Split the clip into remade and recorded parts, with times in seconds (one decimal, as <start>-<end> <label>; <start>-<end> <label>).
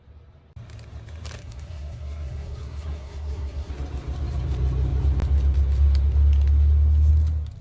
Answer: 0.0-1.4 recorded; 1.4-3.7 remade; 3.7-7.6 recorded